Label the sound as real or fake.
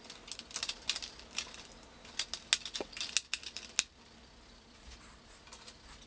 real